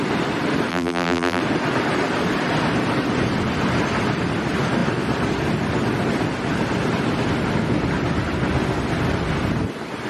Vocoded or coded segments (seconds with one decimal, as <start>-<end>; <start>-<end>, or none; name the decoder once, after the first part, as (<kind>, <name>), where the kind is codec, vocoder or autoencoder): 0.7-1.4 (vocoder, BigVGAN v2)